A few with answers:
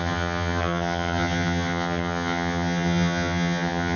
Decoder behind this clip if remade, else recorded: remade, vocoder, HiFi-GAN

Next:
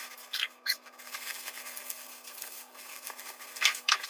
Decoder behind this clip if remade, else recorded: remade, codec, SNAC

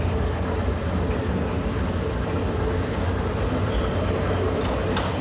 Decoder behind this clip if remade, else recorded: recorded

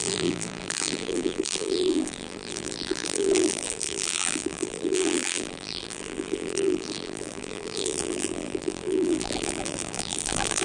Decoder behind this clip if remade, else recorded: remade, vocoder, BigVGAN v2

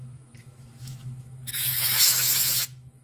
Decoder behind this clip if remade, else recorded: remade, autoencoder, DAC-VAE